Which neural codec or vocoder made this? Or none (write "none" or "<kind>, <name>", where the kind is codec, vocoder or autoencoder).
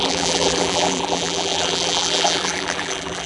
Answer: vocoder, BigVGAN v2